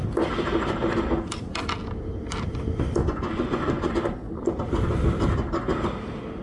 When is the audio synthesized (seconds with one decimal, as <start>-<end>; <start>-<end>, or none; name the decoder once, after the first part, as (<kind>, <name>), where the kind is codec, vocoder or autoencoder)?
3.0-3.9 (vocoder, Vocos)